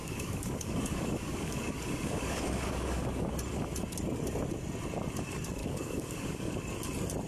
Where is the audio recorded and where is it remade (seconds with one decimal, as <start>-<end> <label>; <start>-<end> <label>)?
0.0-3.3 remade; 3.3-5.6 recorded; 5.6-6.5 remade; 6.5-7.3 recorded